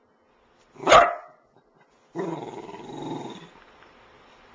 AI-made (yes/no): no